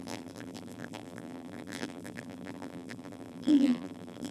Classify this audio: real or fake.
fake